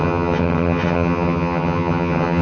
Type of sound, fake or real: fake